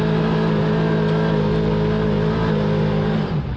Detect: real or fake real